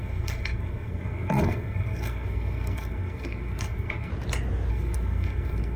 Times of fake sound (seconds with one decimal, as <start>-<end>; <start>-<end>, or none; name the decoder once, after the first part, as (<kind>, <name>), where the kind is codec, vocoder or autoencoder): 0.0-4.1 (codec, SNAC); 4.7-5.8